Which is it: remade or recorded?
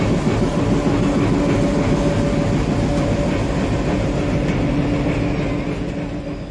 recorded